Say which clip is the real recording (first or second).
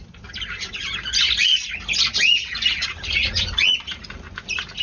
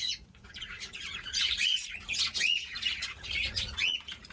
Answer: first